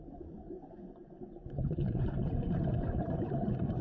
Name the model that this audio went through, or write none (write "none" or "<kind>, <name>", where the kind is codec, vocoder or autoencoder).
vocoder, Vocos